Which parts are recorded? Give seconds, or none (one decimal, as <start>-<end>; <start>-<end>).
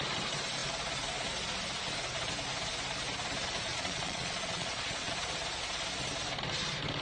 0.0-3.7; 5.1-7.0